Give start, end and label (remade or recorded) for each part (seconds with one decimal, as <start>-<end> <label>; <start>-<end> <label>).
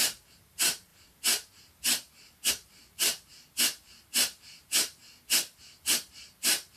0.0-0.9 remade; 0.9-2.5 recorded; 2.5-3.3 remade; 3.3-4.0 recorded; 4.0-5.0 remade; 5.0-5.6 recorded; 5.6-6.8 remade